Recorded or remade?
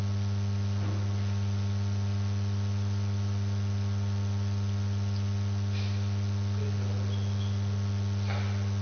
recorded